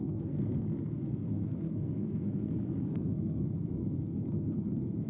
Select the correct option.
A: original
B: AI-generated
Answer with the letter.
B